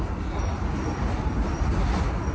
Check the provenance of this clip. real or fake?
real